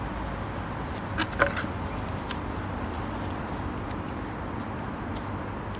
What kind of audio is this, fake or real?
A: real